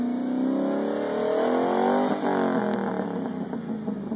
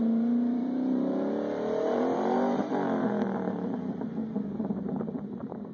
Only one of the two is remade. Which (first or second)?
second